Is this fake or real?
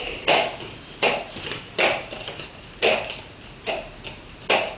real